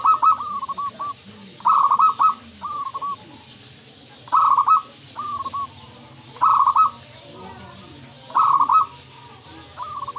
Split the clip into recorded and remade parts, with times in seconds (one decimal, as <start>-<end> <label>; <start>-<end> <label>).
0.0-10.2 recorded